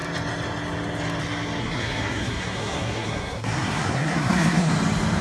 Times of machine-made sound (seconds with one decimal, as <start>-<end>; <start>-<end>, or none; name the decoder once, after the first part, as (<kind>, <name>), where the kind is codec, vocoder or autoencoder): 1.6-4.7 (codec, SNAC)